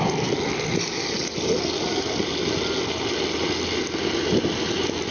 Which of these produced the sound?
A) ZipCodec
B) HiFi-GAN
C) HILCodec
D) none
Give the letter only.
D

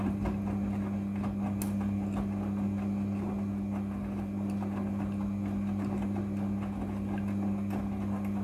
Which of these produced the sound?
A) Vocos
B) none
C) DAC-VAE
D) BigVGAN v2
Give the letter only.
B